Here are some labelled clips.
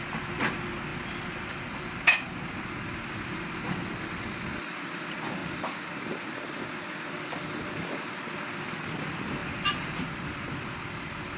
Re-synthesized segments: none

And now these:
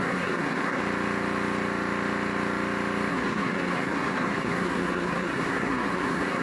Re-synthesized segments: 0.0-0.8 (codec, SNAC); 3.1-6.4

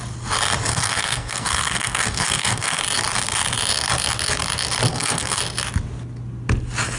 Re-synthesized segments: 0.7-2.8 (codec, SNAC); 4.9-5.4

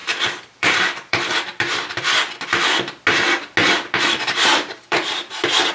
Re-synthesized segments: 0.0-1.9 (vocoder, BigVGAN v2); 3.6-5.3